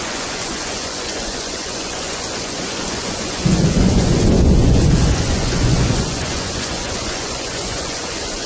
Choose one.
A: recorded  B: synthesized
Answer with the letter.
B